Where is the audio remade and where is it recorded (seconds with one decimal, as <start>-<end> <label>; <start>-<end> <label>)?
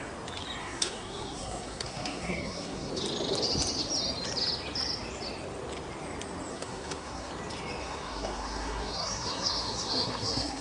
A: 0.0-0.6 recorded; 0.6-2.9 remade; 2.9-6.5 recorded; 6.5-7.3 remade; 7.3-7.8 recorded; 7.8-10.6 remade